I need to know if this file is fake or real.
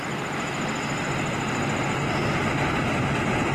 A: real